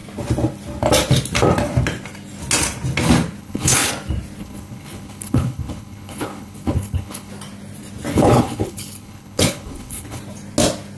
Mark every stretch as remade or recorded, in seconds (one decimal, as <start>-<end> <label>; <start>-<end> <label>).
0.0-3.4 recorded; 3.4-3.9 remade; 3.9-4.4 recorded; 4.4-7.3 remade; 7.3-8.1 recorded; 8.1-10.2 remade; 10.2-11.0 recorded